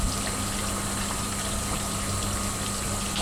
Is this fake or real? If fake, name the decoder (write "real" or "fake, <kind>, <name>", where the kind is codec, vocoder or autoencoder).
real